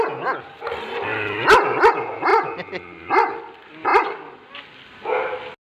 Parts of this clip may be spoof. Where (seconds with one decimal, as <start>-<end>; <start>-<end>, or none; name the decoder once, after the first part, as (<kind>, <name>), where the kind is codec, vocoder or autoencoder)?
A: none